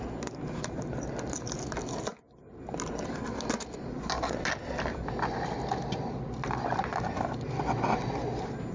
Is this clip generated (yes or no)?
no